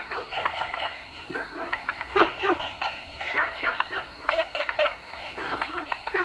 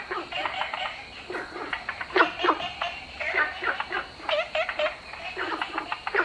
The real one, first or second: second